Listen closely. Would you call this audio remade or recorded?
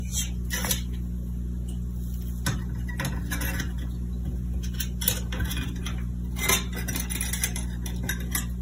recorded